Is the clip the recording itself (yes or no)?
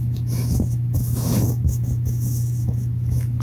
no